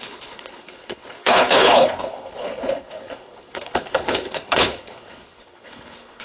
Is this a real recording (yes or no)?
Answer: no